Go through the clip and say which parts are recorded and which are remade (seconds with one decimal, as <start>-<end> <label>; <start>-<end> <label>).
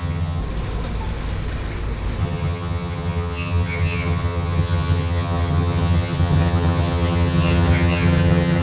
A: 0.0-0.4 remade; 0.4-2.2 recorded; 2.2-8.6 remade